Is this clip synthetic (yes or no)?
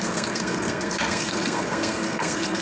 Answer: yes